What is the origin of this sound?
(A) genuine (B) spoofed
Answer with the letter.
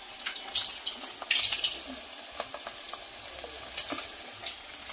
A